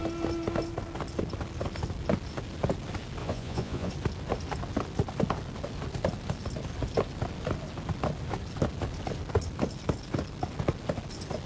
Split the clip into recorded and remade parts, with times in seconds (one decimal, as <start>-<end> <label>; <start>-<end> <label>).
0.0-3.2 recorded; 3.2-3.9 remade; 3.9-11.5 recorded